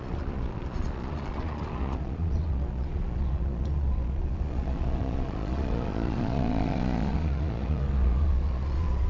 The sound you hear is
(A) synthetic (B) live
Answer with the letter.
A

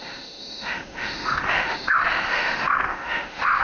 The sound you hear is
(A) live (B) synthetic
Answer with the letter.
B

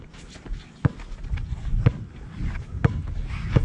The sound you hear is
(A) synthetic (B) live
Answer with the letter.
B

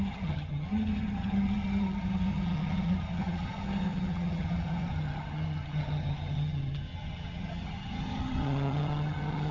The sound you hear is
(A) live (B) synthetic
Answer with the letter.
B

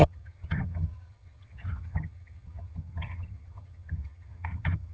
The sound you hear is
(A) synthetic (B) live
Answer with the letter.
A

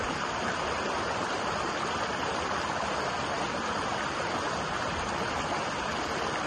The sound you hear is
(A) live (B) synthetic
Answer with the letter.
A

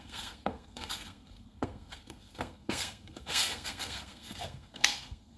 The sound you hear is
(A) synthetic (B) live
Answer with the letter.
A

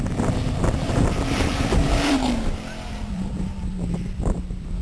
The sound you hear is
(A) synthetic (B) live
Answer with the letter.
A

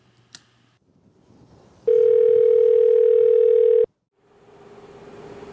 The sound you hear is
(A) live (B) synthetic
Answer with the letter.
A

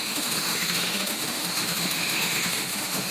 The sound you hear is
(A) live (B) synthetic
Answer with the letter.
B